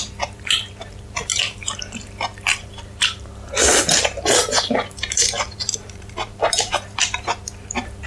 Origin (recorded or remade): remade